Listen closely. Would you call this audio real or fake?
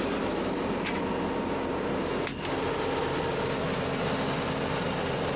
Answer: real